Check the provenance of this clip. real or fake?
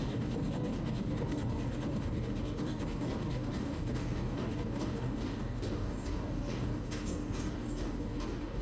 fake